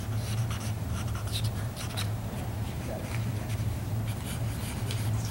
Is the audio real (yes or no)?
no